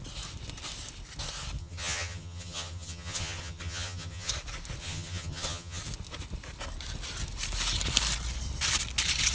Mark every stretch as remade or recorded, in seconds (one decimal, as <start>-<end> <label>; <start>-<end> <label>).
0.0-1.6 recorded; 1.6-4.3 remade; 4.3-4.8 recorded; 4.8-5.8 remade; 5.8-9.3 recorded